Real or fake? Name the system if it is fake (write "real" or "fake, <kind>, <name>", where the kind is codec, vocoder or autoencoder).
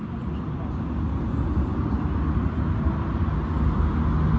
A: real